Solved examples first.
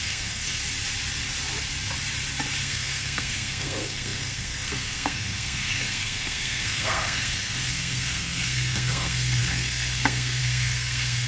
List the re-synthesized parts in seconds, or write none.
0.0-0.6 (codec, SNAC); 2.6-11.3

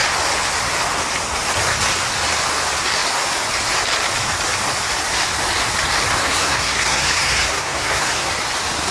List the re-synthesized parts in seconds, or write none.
6.2-8.3 (codec, SNAC)

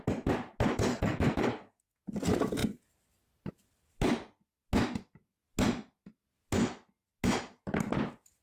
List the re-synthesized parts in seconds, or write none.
0.9-2.0 (codec, SNAC)

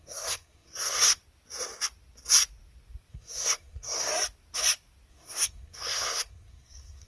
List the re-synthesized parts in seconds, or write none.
0.0-1.2 (codec, SNAC); 3.1-4.1; 5.1-7.1

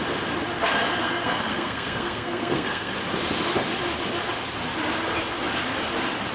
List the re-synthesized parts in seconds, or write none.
1.0-2.9 (codec, SNAC)

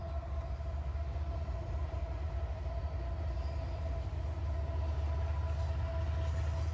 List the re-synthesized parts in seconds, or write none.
none